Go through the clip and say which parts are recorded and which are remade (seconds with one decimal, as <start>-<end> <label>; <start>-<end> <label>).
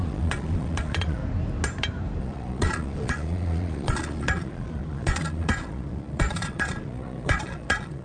0.0-1.2 remade; 1.2-2.2 recorded; 2.2-8.0 remade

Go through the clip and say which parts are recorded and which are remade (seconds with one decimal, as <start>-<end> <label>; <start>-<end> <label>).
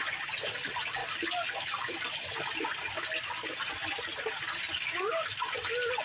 0.0-6.0 recorded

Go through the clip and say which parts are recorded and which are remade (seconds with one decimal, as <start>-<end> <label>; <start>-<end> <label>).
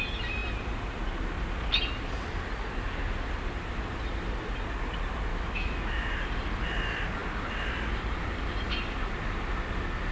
0.0-5.3 recorded; 5.3-6.1 remade; 6.1-10.1 recorded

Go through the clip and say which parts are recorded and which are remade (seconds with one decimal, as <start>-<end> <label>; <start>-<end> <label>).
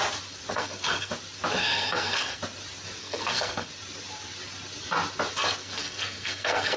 0.0-0.5 recorded; 0.5-1.1 remade; 1.1-1.6 recorded; 1.6-2.4 remade; 2.4-3.0 recorded; 3.0-3.7 remade; 3.7-5.6 recorded; 5.6-6.8 remade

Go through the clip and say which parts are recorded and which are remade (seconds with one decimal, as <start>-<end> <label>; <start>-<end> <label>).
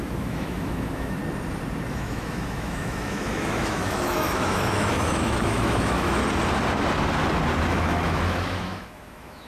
0.0-1.2 remade; 1.2-1.9 recorded; 1.9-6.2 remade; 6.2-7.7 recorded; 7.7-9.5 remade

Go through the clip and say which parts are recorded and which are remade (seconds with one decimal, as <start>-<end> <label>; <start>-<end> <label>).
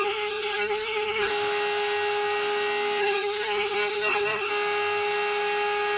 0.0-1.3 remade; 1.3-3.0 recorded; 3.0-4.5 remade; 4.5-6.0 recorded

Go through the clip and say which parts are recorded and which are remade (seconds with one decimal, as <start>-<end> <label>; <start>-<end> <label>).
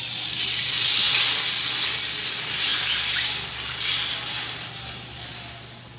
0.0-6.0 recorded